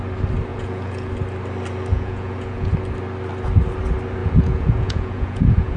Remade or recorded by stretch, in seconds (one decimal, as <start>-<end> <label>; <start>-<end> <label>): 0.0-0.5 recorded; 0.5-1.1 remade; 1.1-1.9 recorded; 1.9-2.7 remade; 2.7-4.2 recorded; 4.2-5.8 remade